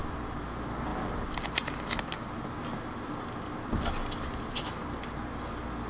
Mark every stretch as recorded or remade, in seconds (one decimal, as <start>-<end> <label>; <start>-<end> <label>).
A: 0.0-5.9 recorded